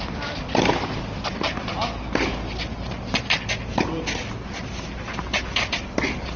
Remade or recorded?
remade